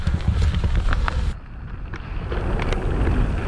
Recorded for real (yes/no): yes